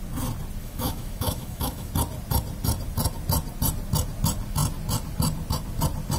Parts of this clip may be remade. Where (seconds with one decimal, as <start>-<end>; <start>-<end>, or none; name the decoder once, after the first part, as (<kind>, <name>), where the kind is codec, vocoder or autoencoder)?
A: 0.6-1.9 (autoencoder, DAC-VAE)